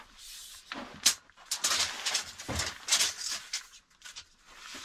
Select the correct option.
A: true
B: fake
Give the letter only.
A